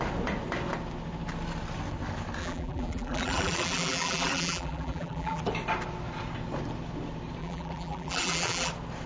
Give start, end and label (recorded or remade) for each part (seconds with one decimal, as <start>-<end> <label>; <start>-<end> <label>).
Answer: 0.0-2.4 recorded; 2.4-5.4 remade; 5.4-7.4 recorded; 7.4-8.7 remade; 8.7-9.1 recorded